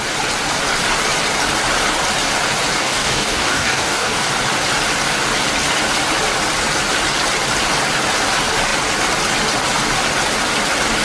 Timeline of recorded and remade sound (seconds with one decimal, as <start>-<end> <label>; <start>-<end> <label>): 0.0-2.8 recorded; 2.8-4.3 remade; 4.3-11.0 recorded